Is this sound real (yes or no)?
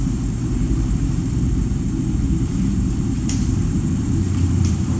no